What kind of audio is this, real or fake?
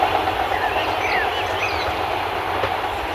real